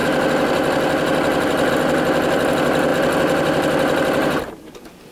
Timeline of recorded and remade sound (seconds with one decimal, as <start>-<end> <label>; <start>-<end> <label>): 0.0-5.1 recorded